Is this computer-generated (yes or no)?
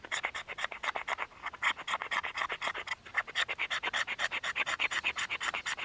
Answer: yes